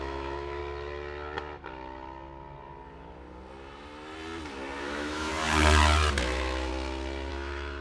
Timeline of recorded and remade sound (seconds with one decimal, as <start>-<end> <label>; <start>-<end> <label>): 0.0-0.6 remade; 0.6-4.8 recorded; 4.8-5.3 remade; 5.3-6.2 recorded; 6.2-6.7 remade; 6.7-7.3 recorded; 7.3-7.8 remade